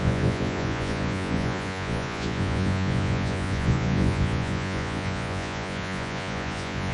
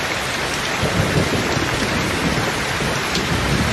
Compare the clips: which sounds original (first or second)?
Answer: second